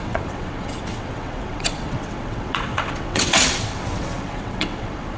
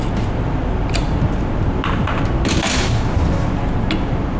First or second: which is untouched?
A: second